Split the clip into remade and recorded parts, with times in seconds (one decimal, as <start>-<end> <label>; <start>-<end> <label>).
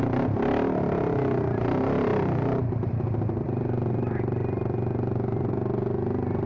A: 0.0-6.5 recorded